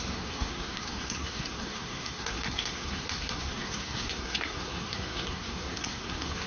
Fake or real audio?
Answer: fake